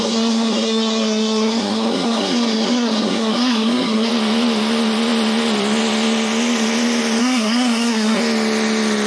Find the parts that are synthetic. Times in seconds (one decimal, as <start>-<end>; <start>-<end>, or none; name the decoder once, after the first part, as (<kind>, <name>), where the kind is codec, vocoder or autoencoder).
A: 0.0-4.1 (codec, SNAC); 7.2-8.2